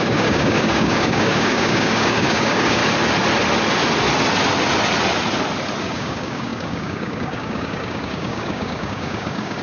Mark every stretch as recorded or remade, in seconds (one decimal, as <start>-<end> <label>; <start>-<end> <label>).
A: 0.0-2.8 remade; 2.8-5.8 recorded; 5.8-9.6 remade